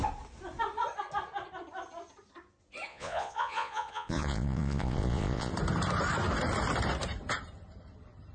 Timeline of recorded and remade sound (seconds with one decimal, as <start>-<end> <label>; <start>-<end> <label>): 0.0-2.9 recorded; 2.9-5.5 remade; 5.5-8.3 recorded